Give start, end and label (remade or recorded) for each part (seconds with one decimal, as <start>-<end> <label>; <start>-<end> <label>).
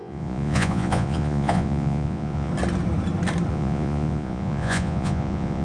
0.0-2.5 remade; 2.5-3.5 recorded; 3.5-5.6 remade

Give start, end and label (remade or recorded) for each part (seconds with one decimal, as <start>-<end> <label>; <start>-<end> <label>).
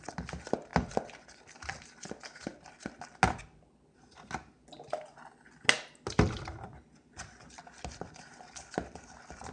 0.0-9.5 recorded